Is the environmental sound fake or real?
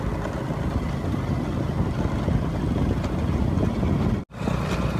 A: real